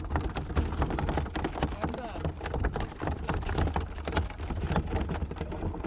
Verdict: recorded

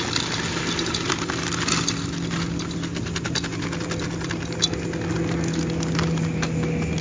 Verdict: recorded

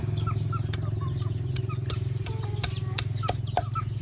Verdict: recorded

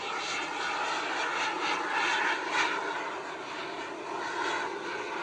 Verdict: recorded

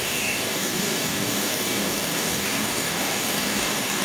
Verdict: remade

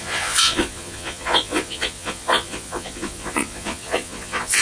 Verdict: remade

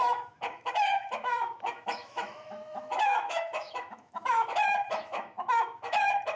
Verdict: remade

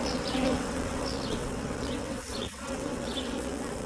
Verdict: remade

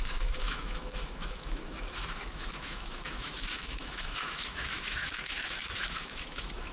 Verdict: remade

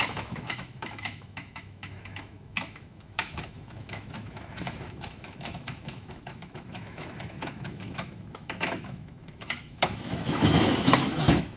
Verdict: remade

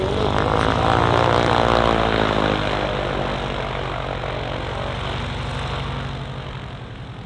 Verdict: recorded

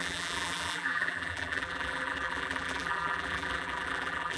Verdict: remade